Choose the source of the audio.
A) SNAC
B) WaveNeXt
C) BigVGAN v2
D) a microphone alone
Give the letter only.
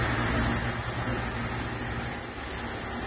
D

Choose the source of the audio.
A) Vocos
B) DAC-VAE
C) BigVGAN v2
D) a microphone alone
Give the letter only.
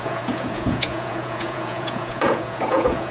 A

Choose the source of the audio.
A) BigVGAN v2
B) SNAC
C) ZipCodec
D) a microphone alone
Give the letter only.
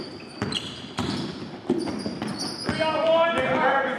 D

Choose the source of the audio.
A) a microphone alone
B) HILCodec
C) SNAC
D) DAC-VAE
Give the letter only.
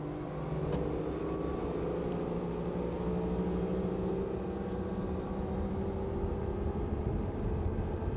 A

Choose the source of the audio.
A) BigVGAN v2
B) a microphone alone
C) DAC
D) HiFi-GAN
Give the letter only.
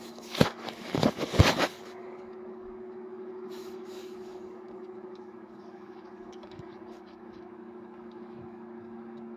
C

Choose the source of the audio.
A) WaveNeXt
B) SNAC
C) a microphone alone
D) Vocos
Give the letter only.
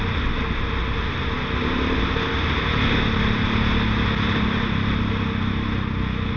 C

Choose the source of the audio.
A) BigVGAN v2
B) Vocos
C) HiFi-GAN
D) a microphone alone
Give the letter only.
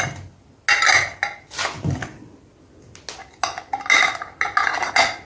D